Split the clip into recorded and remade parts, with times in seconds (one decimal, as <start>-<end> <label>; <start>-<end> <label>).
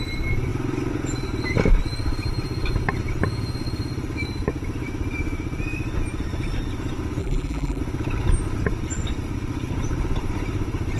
0.0-7.2 recorded; 7.2-7.8 remade; 7.8-11.0 recorded